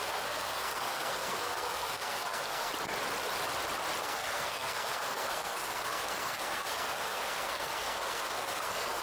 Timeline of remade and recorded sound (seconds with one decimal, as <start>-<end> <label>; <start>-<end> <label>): 0.0-2.7 remade; 2.7-4.0 recorded; 4.0-9.0 remade